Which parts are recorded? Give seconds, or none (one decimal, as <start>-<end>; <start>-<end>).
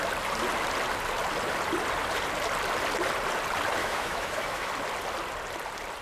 0.0-3.8; 4.7-6.0